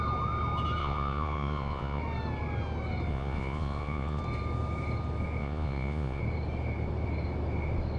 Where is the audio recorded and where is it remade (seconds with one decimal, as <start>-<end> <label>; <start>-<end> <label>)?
0.0-0.8 recorded; 0.8-2.0 remade; 2.0-3.1 recorded; 3.1-4.2 remade; 4.2-5.4 recorded; 5.4-6.2 remade; 6.2-8.0 recorded